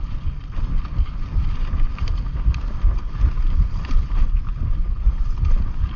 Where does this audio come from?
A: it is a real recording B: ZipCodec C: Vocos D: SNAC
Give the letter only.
A